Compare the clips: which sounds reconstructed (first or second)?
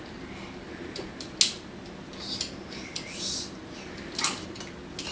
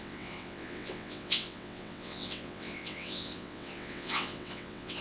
second